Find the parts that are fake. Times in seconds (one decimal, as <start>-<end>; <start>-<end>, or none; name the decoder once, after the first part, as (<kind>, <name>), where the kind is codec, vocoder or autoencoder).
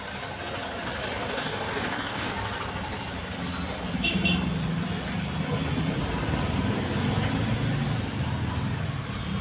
1.2-2.3 (codec, DAC)